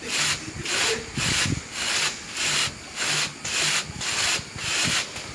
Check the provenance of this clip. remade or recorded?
recorded